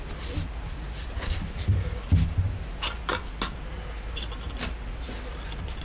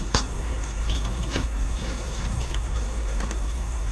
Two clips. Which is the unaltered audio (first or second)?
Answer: first